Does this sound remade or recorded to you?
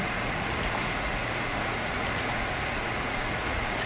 remade